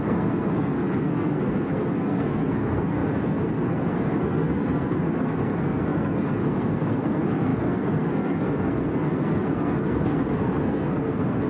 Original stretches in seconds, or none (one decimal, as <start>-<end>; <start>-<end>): none